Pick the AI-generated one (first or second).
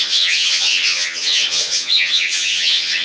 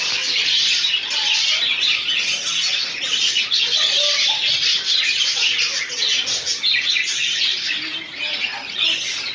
first